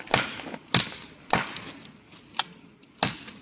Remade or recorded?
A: recorded